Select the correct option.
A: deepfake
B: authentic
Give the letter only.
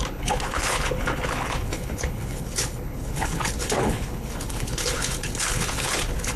A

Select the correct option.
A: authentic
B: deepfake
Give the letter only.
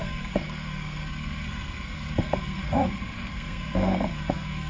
B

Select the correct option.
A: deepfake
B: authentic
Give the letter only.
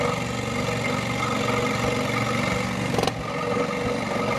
B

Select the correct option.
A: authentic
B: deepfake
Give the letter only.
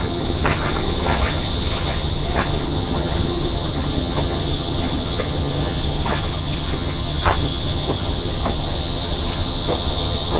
B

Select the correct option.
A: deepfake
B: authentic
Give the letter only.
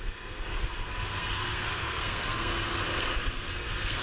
A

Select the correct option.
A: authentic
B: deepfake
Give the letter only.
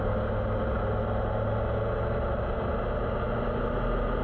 A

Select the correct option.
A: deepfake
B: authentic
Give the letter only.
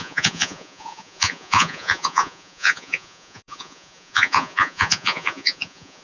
A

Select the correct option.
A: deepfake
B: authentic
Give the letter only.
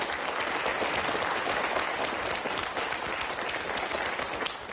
B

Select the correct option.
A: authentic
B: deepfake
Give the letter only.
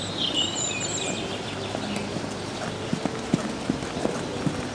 A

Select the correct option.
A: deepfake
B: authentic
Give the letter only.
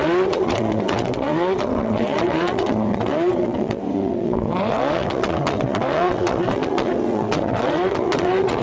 A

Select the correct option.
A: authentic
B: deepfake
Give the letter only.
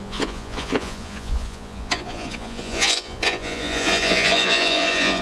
B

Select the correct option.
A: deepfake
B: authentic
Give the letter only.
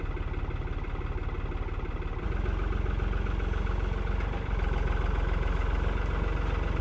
B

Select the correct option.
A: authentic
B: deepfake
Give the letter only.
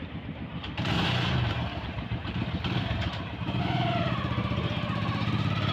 B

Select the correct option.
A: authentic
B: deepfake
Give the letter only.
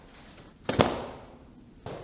A